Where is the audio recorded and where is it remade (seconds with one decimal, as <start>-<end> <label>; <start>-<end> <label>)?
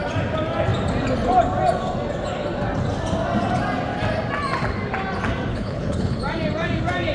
0.0-5.5 recorded; 5.5-6.2 remade; 6.2-7.1 recorded